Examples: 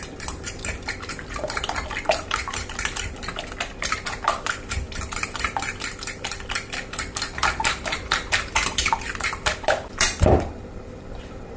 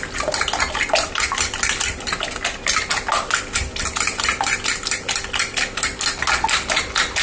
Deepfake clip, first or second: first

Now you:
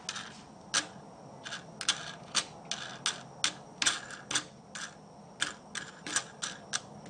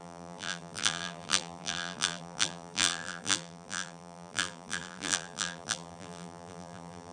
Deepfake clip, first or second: second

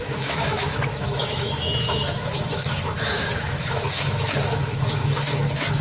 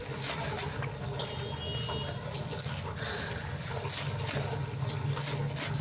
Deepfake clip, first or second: first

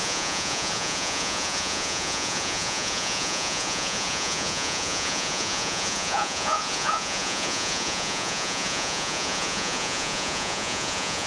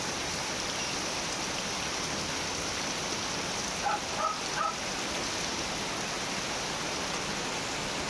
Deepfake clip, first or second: first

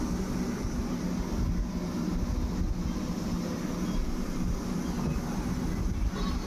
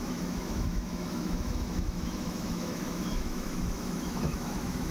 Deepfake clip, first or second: second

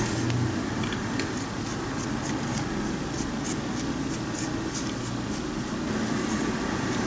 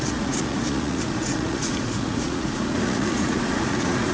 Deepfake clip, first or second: second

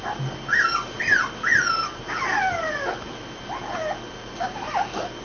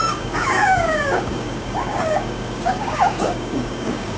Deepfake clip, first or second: second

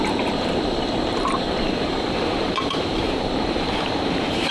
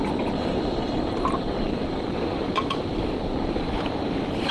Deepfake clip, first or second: first